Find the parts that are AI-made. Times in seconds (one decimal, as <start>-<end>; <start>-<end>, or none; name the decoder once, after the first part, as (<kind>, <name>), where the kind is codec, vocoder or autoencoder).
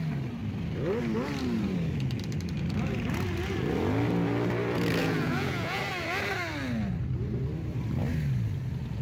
5.0-5.8 (vocoder, Vocos)